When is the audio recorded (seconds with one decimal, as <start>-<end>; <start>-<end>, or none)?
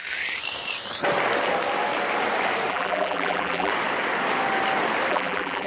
0.0-2.7; 3.7-5.1